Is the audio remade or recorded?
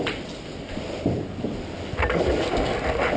recorded